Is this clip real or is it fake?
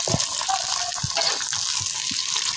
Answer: real